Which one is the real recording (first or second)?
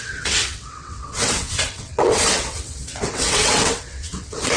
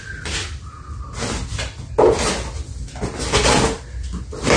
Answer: second